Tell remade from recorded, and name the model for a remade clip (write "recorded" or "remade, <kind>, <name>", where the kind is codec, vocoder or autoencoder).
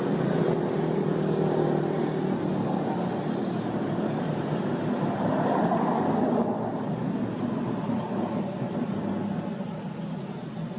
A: recorded